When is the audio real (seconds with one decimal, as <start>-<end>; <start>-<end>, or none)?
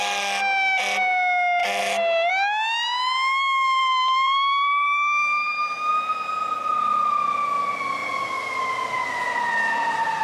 0.0-3.8; 5.9-10.2